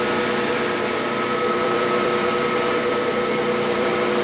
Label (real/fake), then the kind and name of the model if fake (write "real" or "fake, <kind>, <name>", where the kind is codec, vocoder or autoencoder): fake, vocoder, BigVGAN v2